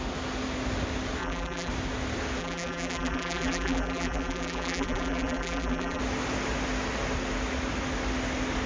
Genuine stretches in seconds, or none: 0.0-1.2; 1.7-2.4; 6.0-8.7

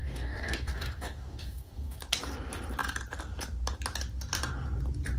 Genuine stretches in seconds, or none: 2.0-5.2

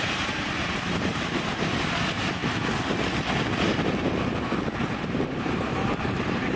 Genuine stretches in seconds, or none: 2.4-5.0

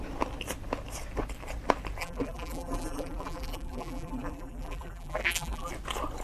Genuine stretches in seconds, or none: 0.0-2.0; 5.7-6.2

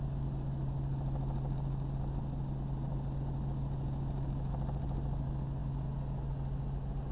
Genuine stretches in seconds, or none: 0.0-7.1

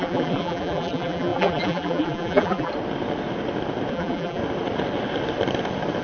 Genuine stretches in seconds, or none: 2.7-3.9; 4.4-6.0